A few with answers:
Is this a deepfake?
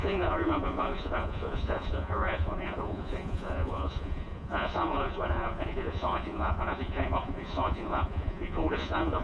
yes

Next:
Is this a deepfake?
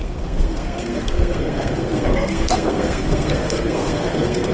yes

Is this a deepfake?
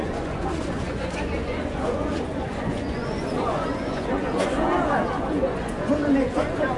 yes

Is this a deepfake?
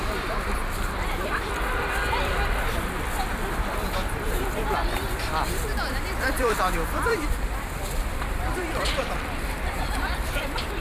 yes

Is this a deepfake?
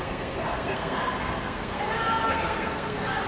yes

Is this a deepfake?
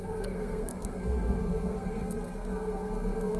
yes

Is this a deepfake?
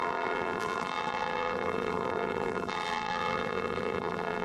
yes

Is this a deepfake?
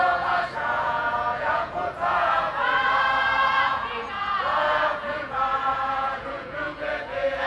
yes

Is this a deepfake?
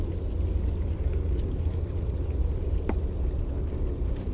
no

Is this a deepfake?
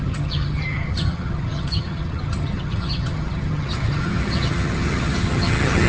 yes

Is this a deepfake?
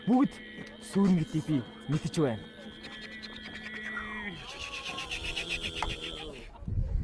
no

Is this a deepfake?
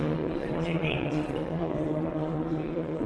yes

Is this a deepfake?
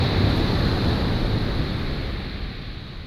no